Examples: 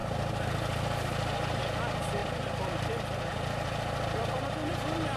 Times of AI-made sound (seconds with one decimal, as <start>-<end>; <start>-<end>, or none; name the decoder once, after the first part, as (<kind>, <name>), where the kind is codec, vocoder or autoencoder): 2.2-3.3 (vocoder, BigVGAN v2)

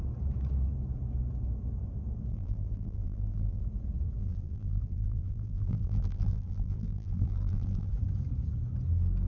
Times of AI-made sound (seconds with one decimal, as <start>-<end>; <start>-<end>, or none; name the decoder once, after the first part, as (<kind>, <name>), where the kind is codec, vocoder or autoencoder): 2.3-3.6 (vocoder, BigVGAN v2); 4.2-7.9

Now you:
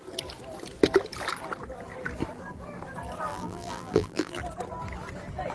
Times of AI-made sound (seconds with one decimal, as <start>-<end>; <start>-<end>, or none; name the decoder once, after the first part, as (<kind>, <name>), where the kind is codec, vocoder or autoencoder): 3.3-4.4 (vocoder, BigVGAN v2)